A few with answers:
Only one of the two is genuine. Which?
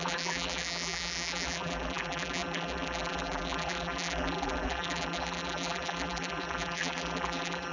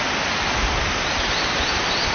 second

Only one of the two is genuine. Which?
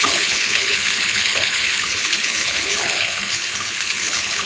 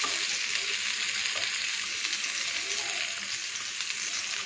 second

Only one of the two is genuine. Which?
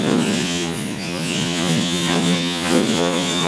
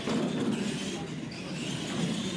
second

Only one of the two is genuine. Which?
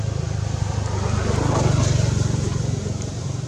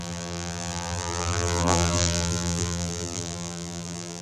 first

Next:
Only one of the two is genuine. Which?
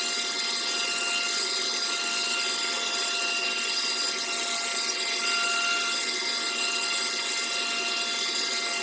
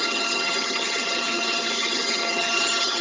first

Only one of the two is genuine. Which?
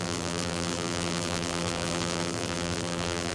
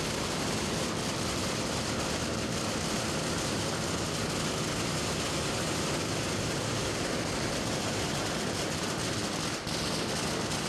second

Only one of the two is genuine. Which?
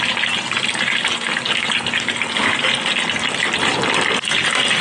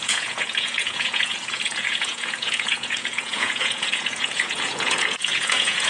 first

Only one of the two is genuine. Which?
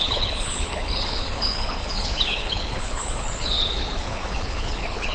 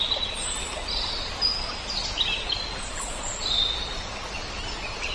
second